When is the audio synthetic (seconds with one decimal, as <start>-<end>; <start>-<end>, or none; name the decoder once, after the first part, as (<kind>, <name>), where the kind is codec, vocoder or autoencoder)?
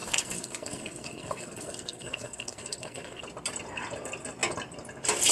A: 0.0-3.2 (codec, SNAC)